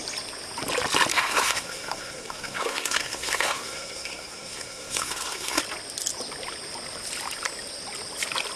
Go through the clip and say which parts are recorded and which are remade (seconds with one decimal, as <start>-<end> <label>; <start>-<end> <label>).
0.0-1.1 recorded; 1.1-5.6 remade; 5.6-8.6 recorded